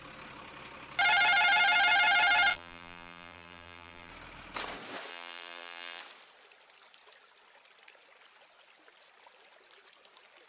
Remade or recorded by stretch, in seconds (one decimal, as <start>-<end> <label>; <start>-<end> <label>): 0.0-2.5 recorded; 2.5-4.1 remade; 4.1-5.1 recorded; 5.1-6.0 remade; 6.0-10.5 recorded